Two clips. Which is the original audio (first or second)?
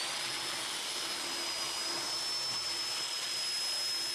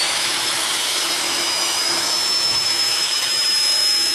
first